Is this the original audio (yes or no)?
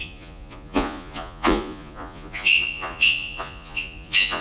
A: no